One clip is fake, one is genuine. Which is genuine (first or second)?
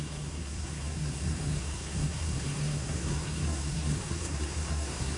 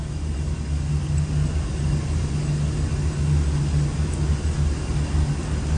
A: second